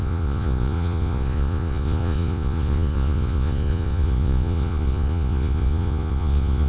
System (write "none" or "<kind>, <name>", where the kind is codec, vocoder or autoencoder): vocoder, Vocos